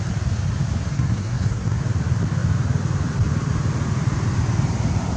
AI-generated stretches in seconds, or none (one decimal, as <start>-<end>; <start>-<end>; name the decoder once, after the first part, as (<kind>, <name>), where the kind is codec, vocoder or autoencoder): 0.9-1.8 (codec, SNAC)